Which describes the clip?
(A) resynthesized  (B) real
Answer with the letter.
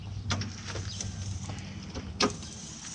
B